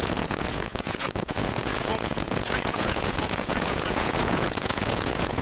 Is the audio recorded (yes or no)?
no